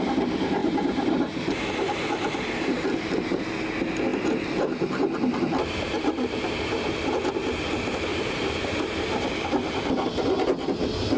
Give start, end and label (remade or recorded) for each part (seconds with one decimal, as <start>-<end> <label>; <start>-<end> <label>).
0.0-0.6 recorded; 0.6-1.7 remade; 1.7-4.1 recorded; 4.1-7.1 remade; 7.1-8.1 recorded; 8.1-9.8 remade; 9.8-11.2 recorded